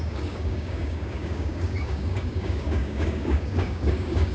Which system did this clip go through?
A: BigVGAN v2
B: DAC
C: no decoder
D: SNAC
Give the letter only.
B